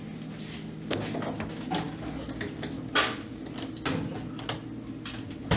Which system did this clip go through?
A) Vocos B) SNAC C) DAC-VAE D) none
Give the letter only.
D